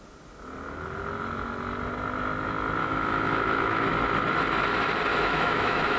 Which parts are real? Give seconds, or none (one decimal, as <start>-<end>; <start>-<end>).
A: 0.0-2.8; 3.9-5.1